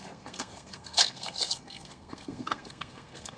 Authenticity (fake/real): fake